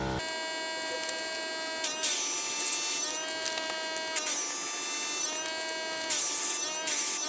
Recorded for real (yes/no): yes